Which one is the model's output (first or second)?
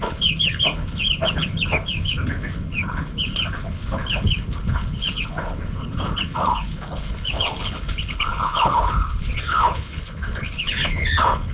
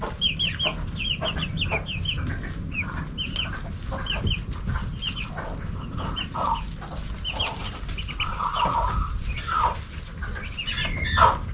first